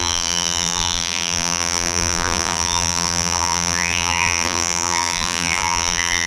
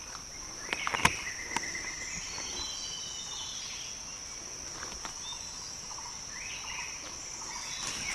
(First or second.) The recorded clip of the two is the second